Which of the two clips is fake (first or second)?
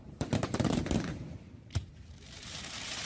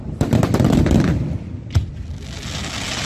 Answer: first